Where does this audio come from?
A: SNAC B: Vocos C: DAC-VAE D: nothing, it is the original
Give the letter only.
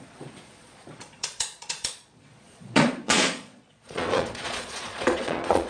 B